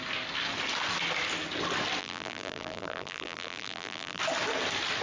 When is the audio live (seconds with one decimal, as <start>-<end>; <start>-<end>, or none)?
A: 0.0-2.0; 4.2-5.0